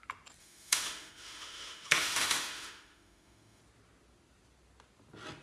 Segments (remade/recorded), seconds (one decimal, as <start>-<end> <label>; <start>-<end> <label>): 0.0-0.4 recorded; 0.4-3.6 remade; 3.6-5.4 recorded